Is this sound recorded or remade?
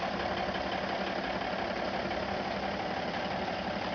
recorded